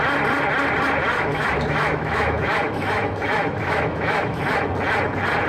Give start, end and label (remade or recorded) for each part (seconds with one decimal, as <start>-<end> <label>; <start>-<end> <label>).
0.0-1.1 recorded; 1.1-4.4 remade; 4.4-5.5 recorded

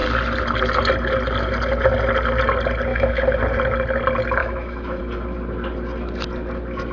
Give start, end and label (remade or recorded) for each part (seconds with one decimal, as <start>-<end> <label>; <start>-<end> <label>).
0.0-2.9 recorded; 2.9-3.4 remade; 3.4-4.4 recorded; 4.4-5.0 remade; 5.0-6.9 recorded

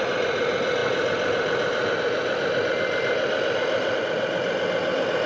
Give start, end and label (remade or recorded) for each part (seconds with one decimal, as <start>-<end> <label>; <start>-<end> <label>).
0.0-5.3 recorded

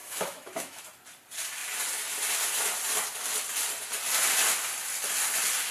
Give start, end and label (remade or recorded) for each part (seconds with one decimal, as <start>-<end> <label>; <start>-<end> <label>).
0.0-0.8 remade; 0.8-5.7 recorded

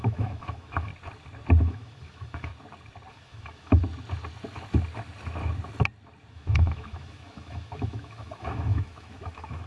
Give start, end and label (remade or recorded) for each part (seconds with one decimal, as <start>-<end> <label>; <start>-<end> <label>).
0.0-0.9 remade; 0.9-1.6 recorded; 1.6-2.5 remade; 2.5-3.1 recorded; 3.1-3.8 remade; 3.8-6.3 recorded; 6.3-9.7 remade

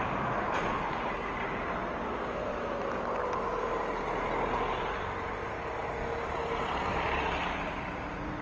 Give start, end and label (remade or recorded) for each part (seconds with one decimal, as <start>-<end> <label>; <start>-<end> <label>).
0.0-8.4 recorded

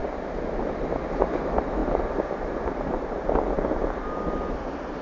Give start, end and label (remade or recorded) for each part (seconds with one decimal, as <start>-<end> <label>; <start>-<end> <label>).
0.0-1.4 recorded; 1.4-1.8 remade; 1.8-5.0 recorded

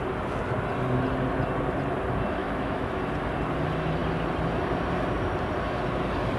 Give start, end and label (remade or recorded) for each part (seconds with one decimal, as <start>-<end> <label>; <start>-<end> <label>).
0.0-2.4 recorded; 2.4-3.0 remade; 3.0-6.4 recorded